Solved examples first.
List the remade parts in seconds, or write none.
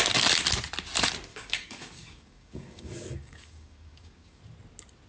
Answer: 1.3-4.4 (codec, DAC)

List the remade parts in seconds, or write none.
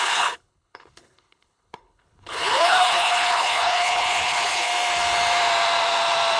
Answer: 0.0-4.7 (codec, HILCodec)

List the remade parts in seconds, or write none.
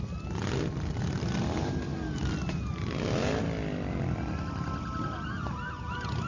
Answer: none